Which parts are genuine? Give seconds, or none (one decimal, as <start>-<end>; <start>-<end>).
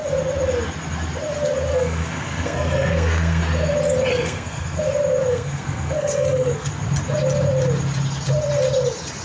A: 0.0-1.7; 3.4-4.1; 4.8-5.3; 6.7-9.2